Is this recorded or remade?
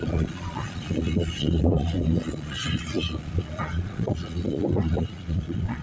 remade